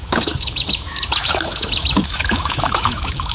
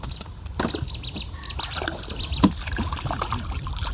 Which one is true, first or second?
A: second